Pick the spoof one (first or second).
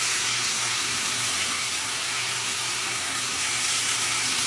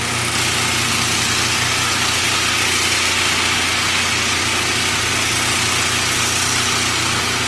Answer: first